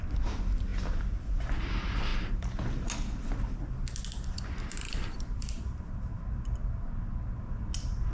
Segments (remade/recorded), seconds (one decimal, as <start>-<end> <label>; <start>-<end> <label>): 0.0-2.1 recorded; 2.1-2.7 remade; 2.7-4.9 recorded; 4.9-5.6 remade; 5.6-8.1 recorded